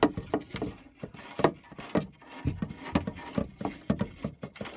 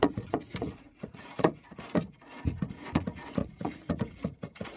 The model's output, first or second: second